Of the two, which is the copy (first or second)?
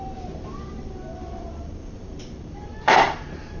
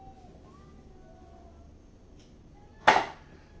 first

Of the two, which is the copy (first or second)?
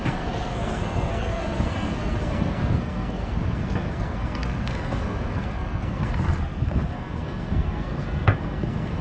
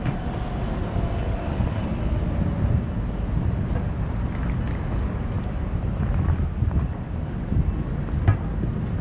first